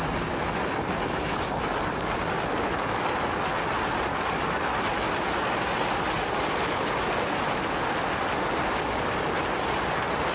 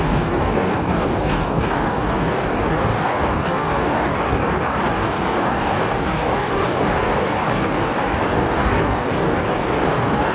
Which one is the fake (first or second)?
second